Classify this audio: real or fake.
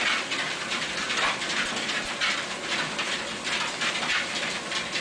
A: real